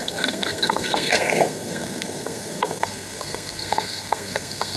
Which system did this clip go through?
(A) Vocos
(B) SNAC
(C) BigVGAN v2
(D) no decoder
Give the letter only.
B